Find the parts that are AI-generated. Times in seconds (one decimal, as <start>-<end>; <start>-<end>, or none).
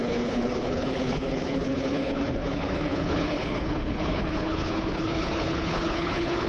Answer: 0.0-6.5